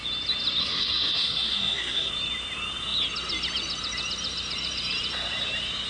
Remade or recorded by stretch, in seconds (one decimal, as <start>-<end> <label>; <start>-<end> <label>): 0.0-0.6 recorded; 0.6-2.1 remade; 2.1-5.9 recorded